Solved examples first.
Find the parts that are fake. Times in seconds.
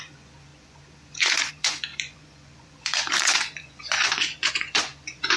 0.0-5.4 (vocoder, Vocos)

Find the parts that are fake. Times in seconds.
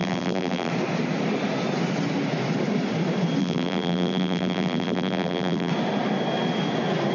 0.0-0.7 (vocoder, BigVGAN v2); 3.4-5.7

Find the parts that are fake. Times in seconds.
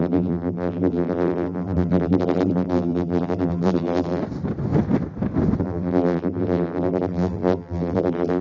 0.0-4.2 (vocoder, BigVGAN v2); 5.6-8.4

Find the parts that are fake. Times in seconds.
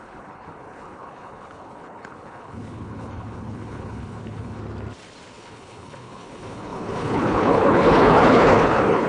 0.0-4.6 (codec, HILCodec); 5.3-9.1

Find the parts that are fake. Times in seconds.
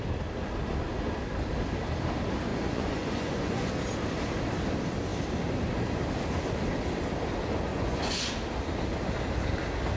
2.5-3.7 (vocoder, Vocos); 7.7-8.3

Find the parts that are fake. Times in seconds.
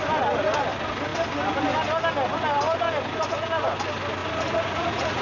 4.2-5.2 (vocoder, Vocos)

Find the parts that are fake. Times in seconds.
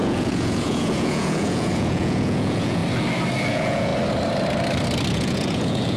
0.0-2.8 (vocoder, Vocos); 3.5-3.9; 5.1-6.0